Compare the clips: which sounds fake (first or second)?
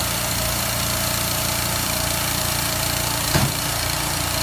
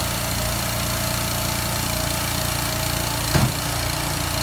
first